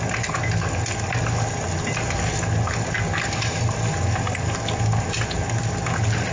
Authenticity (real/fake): real